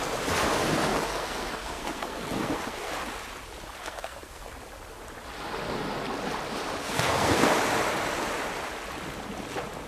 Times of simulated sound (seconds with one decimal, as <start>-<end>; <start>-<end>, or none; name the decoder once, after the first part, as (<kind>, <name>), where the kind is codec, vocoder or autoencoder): 0.9-2.9 (codec, SNAC); 3.8-4.6; 6.8-7.5